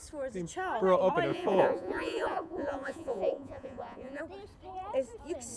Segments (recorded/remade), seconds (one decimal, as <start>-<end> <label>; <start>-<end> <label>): 0.0-1.3 recorded; 1.3-4.2 remade; 4.2-5.6 recorded